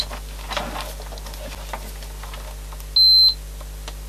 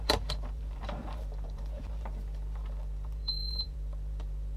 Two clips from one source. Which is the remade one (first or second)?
second